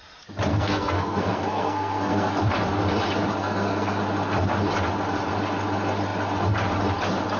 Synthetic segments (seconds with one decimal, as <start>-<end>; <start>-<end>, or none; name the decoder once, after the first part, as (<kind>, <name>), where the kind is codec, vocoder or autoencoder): 0.5-2.4 (codec, SNAC); 3.4-4.0